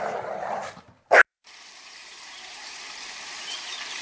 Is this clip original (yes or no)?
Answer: no